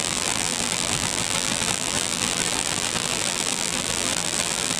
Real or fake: fake